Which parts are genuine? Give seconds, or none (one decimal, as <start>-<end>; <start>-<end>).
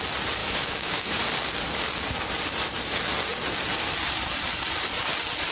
0.0-0.4; 1.2-5.5